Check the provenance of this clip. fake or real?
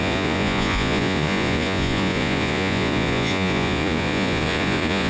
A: fake